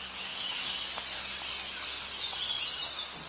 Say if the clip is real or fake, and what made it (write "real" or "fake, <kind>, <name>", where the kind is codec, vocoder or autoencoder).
real